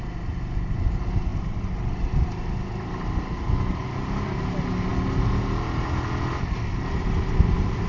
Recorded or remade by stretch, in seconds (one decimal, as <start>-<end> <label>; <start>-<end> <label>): 0.0-7.9 recorded